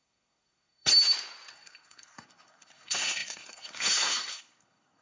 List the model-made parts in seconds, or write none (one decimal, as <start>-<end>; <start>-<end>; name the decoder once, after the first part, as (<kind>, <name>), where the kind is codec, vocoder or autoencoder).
0.0-0.9 (codec, SNAC); 1.5-5.0